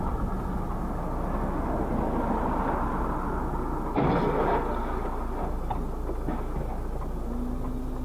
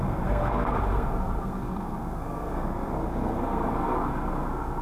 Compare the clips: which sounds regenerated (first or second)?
second